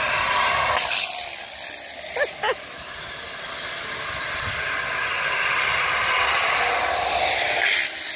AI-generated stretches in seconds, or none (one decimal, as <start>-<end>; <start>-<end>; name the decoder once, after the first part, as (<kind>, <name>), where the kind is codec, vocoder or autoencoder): none